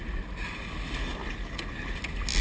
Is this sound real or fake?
real